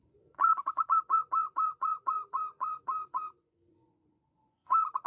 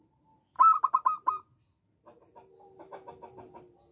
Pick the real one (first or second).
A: second